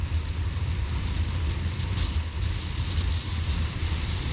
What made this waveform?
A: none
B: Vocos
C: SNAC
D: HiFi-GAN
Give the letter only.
A